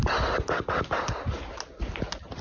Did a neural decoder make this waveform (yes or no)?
no